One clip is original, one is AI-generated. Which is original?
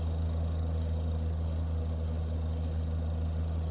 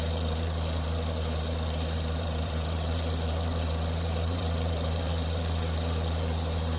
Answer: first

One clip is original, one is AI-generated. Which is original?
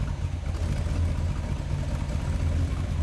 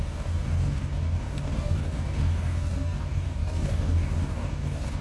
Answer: first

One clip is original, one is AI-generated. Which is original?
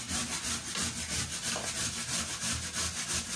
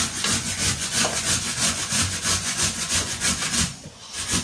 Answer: first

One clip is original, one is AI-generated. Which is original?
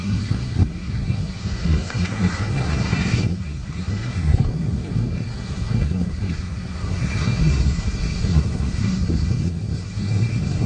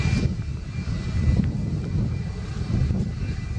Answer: second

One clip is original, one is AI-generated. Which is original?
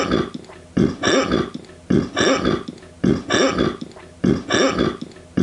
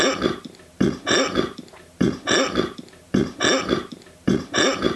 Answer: first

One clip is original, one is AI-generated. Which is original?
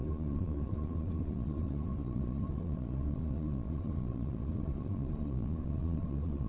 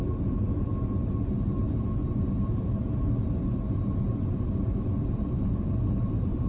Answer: second